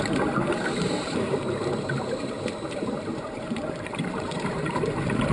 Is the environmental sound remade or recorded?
remade